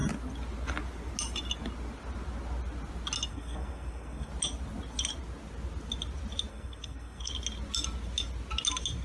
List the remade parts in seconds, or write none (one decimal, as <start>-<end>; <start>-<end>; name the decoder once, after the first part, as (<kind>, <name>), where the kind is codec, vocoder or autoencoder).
3.3-4.3 (codec, SNAC); 6.5-7.3